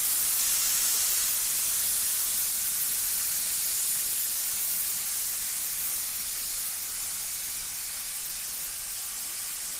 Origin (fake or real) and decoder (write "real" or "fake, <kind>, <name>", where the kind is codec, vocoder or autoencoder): real